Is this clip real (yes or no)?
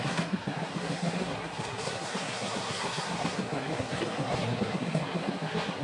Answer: no